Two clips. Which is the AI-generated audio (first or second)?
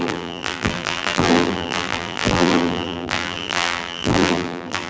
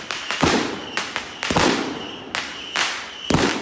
first